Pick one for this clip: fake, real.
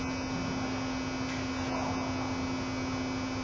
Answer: real